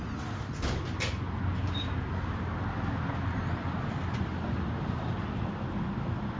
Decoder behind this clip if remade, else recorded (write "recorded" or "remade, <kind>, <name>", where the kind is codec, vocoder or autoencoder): recorded